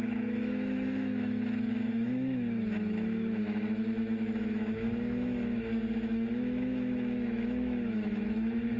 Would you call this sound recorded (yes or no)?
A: no